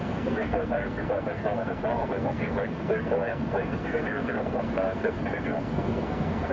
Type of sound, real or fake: fake